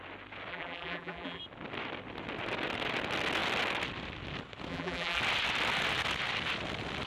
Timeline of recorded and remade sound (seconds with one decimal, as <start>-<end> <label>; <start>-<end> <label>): 0.0-0.5 recorded; 0.5-1.4 remade; 1.4-4.7 recorded; 4.7-5.2 remade; 5.2-7.1 recorded

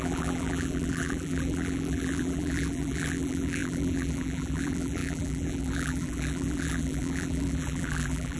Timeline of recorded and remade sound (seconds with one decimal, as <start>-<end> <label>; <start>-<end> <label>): 0.0-8.4 remade

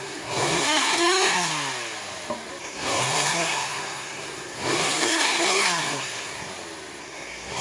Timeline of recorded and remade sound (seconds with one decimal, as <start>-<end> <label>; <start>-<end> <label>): 0.0-1.5 remade; 1.5-2.6 recorded; 2.6-6.5 remade; 6.5-7.0 recorded; 7.0-7.6 remade

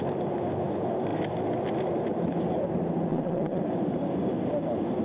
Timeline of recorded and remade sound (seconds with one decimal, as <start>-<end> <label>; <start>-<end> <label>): 0.0-3.1 recorded; 3.1-3.6 remade; 3.6-5.0 recorded

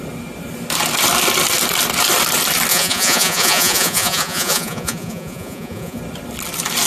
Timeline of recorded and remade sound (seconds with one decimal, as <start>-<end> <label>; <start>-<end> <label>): 0.0-2.7 recorded; 2.7-6.0 remade; 6.0-6.9 recorded

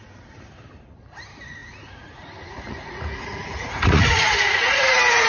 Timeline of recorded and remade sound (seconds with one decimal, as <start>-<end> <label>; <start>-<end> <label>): 0.0-1.6 recorded; 1.6-4.8 remade; 4.8-5.3 recorded

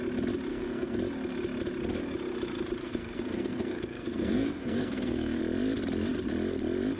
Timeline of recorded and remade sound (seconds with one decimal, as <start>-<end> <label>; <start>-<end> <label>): 0.0-0.5 recorded; 0.5-1.0 remade; 1.0-2.8 recorded; 2.8-5.4 remade; 5.4-7.0 recorded

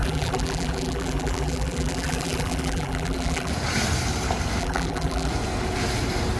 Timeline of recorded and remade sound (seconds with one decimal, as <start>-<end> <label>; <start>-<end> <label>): 0.0-3.5 remade; 3.5-4.6 recorded; 4.6-5.3 remade; 5.3-6.4 recorded